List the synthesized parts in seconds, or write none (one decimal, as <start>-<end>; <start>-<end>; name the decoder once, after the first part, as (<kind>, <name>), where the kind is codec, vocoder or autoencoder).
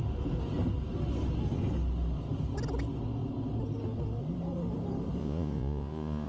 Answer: 5.2-6.3 (vocoder, Vocos)